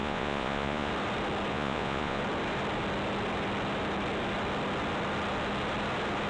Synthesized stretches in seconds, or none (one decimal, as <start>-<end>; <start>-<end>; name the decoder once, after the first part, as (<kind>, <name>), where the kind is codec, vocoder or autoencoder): 0.0-0.9 (vocoder, Vocos); 1.5-2.2